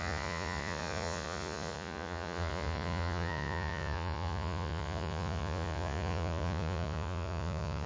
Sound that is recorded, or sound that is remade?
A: remade